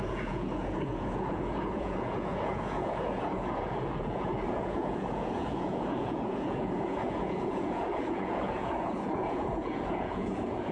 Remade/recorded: remade